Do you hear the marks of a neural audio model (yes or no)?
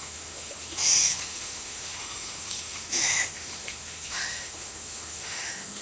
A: yes